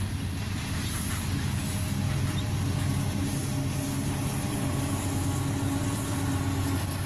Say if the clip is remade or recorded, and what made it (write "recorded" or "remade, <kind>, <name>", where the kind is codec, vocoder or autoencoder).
recorded